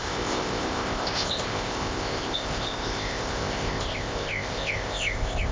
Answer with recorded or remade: remade